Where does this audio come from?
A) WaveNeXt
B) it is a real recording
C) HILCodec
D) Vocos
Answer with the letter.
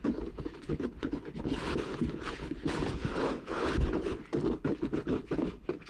C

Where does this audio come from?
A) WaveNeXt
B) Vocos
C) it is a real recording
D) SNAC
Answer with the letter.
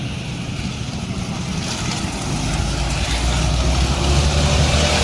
C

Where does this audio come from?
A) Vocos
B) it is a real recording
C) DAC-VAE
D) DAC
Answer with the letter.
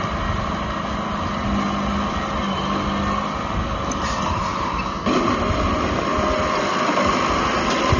B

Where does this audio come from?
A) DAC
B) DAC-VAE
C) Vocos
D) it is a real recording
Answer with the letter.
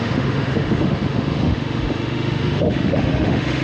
B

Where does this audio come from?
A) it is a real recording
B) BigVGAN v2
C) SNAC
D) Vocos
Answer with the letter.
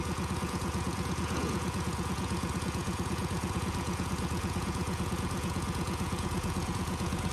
D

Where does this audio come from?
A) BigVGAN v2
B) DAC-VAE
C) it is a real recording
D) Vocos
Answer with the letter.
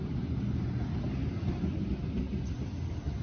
C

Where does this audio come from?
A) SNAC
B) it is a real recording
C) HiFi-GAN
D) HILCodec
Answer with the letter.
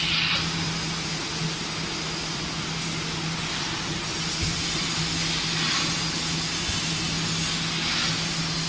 B